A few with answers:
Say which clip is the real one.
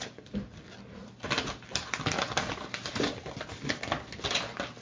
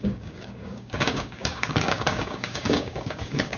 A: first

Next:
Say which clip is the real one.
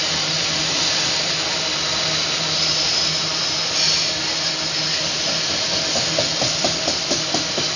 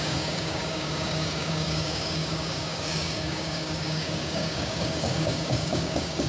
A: first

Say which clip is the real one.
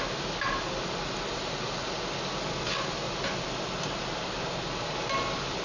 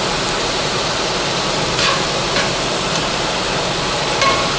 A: first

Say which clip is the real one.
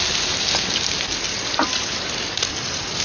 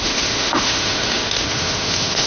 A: first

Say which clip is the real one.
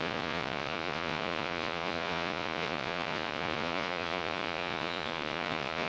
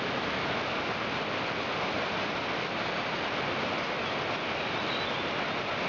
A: second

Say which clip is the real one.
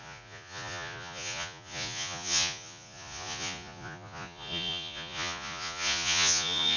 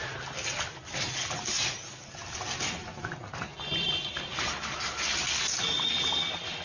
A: second